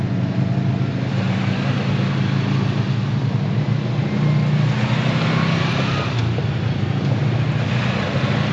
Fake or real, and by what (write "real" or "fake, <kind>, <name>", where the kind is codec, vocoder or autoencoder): real